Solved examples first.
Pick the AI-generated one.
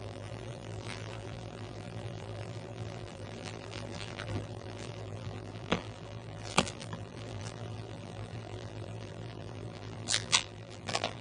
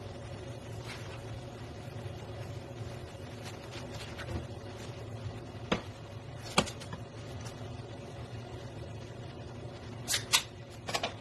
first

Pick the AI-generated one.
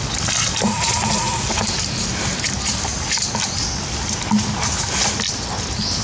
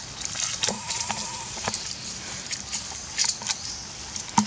second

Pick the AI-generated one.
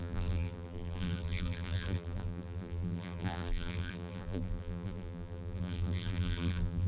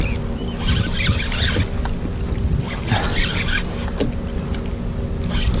first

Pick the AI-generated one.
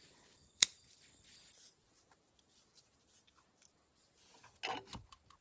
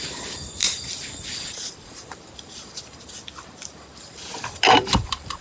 second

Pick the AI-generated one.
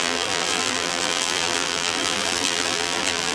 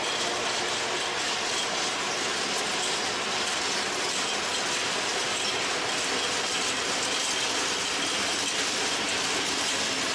first